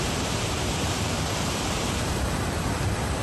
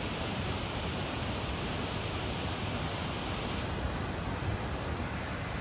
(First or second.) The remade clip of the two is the first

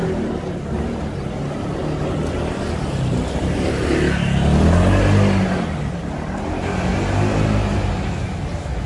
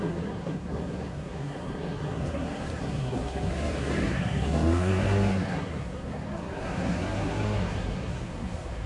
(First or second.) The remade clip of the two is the second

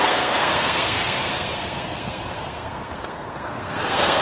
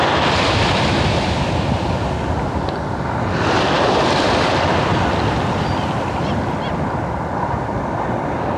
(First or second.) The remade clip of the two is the first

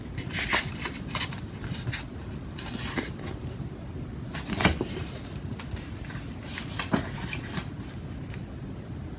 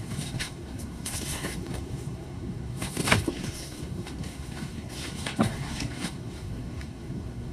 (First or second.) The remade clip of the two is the second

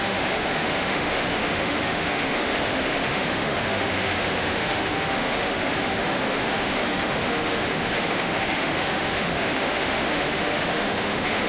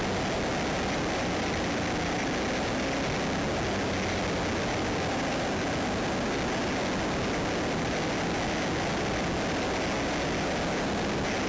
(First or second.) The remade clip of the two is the first